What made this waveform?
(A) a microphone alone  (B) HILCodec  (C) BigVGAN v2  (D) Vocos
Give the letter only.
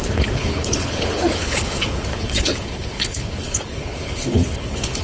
B